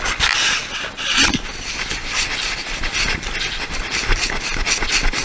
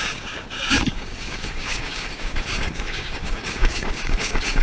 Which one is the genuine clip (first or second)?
first